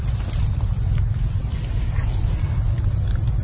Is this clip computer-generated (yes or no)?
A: no